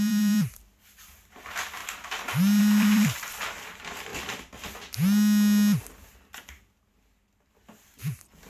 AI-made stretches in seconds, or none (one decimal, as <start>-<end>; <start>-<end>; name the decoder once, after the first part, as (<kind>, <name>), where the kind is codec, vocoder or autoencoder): 0.0-1.8 (vocoder, BigVGAN v2); 2.6-4.1